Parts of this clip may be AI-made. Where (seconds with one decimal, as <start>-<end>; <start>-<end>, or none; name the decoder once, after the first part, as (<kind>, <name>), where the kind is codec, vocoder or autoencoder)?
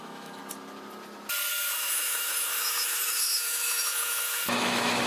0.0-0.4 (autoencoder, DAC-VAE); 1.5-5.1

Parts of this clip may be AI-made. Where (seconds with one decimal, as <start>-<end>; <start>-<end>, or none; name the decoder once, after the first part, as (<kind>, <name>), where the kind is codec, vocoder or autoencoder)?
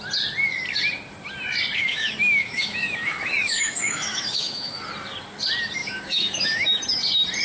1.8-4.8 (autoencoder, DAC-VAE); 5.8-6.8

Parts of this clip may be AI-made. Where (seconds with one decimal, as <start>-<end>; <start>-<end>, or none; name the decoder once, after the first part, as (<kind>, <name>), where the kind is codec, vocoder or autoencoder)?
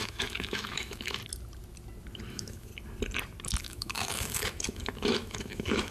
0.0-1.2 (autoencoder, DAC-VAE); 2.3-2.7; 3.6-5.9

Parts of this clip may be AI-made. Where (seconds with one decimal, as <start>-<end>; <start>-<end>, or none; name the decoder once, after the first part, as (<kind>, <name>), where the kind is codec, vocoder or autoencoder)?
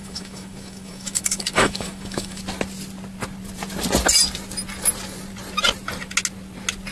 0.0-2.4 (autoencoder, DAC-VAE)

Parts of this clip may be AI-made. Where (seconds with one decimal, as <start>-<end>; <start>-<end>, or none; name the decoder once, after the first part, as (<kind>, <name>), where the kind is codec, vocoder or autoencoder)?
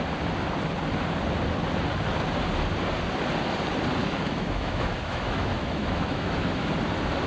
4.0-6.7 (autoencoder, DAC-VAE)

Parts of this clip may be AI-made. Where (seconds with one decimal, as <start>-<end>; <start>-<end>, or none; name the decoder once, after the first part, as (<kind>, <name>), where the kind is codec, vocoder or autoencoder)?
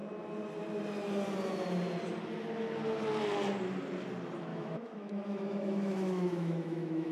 4.5-7.1 (autoencoder, DAC-VAE)